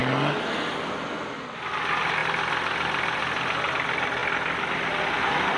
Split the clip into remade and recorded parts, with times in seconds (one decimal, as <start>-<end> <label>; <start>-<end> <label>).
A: 0.0-5.6 recorded